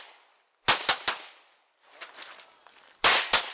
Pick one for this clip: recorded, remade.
recorded